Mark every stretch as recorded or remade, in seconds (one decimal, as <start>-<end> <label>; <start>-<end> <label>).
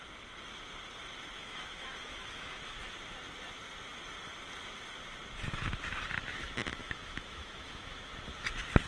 0.0-1.4 recorded; 1.4-2.8 remade; 2.8-6.7 recorded; 6.7-8.1 remade; 8.1-8.9 recorded